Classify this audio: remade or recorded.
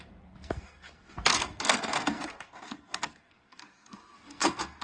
remade